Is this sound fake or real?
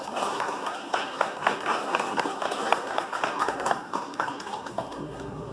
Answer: fake